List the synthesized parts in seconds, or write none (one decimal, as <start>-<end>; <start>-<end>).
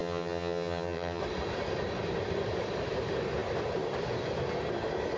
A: 0.0-1.2